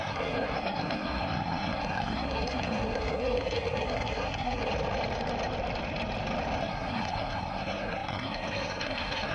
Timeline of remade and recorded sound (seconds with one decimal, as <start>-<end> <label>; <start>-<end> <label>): 0.0-4.7 remade; 4.7-6.6 recorded; 6.6-9.3 remade